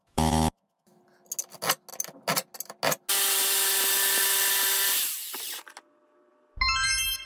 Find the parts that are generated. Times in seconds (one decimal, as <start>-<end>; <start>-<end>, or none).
0.0-1.0